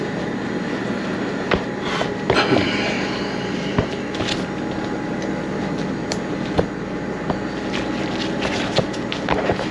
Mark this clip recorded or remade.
recorded